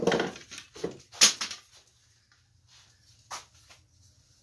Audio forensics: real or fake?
real